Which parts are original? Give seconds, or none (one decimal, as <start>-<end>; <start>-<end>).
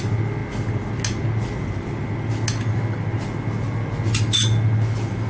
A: 0.0-5.3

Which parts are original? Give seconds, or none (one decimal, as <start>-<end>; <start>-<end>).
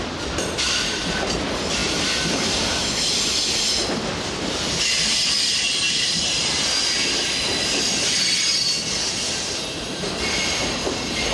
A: 7.0-9.9